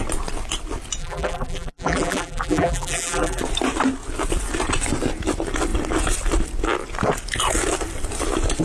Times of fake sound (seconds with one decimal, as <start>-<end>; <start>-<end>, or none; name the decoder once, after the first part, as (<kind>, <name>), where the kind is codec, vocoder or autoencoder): 1.0-3.4 (vocoder, BigVGAN v2)